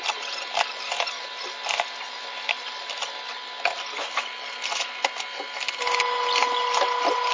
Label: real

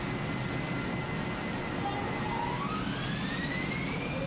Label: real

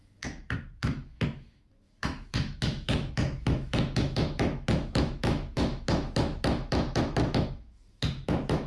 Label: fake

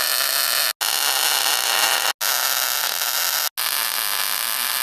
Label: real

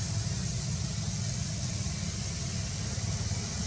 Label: real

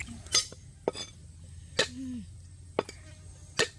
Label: real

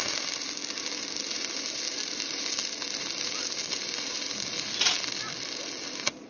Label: real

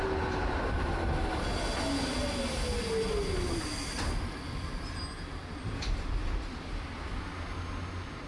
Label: real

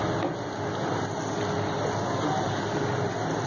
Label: real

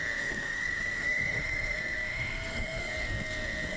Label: fake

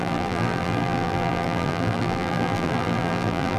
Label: fake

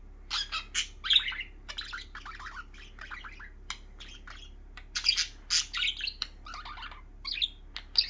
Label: real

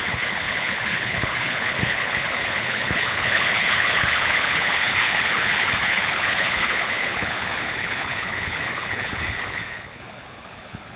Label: fake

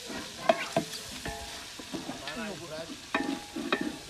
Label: real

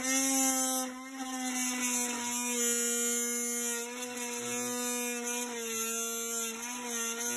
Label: real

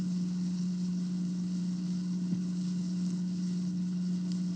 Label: fake